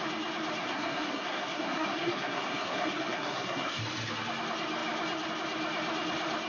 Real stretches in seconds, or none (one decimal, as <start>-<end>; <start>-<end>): 0.0-0.6; 3.8-6.5